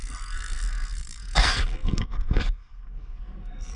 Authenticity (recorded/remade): remade